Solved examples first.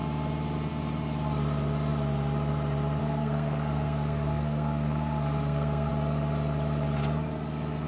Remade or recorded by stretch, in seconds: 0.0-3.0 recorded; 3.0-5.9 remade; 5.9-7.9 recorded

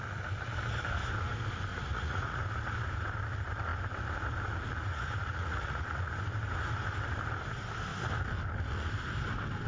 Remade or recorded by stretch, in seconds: 0.0-1.7 recorded; 1.7-2.4 remade; 2.4-4.9 recorded; 4.9-6.1 remade; 6.1-9.7 recorded

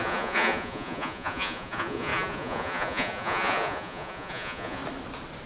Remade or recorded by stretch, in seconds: 0.0-4.8 remade; 4.8-5.5 recorded

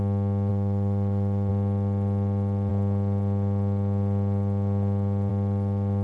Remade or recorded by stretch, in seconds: 0.0-0.5 recorded; 0.5-1.5 remade; 1.5-6.0 recorded

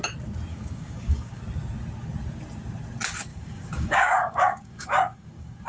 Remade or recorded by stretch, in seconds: 0.0-0.5 recorded; 0.5-1.4 remade; 1.4-3.3 recorded; 3.3-5.7 remade

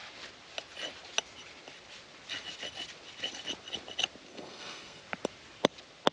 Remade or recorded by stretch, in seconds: 0.0-4.3 recorded; 4.3-5.0 remade; 5.0-6.1 recorded